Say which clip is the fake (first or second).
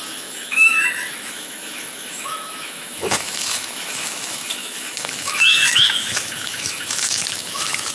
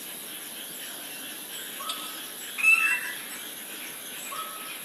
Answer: first